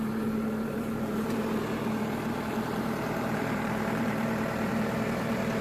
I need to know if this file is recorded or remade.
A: remade